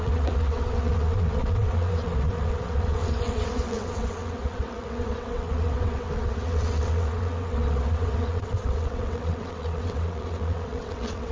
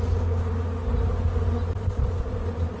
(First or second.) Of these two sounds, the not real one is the first